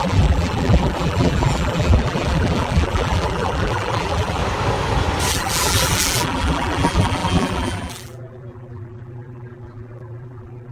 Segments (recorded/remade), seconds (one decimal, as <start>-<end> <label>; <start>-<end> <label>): 0.0-4.4 remade; 4.4-5.3 recorded; 5.3-10.7 remade